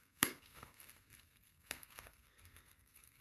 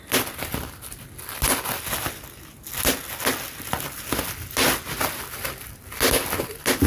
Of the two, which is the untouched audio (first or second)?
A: second